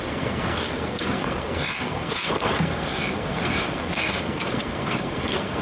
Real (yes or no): no